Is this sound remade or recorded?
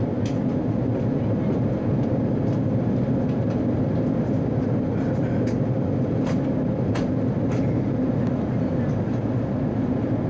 recorded